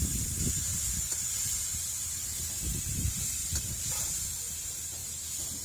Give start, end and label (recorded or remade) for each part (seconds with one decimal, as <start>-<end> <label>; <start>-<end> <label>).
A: 0.0-0.7 remade; 0.7-1.7 recorded; 1.7-2.2 remade; 2.2-2.8 recorded; 2.8-5.0 remade; 5.0-5.6 recorded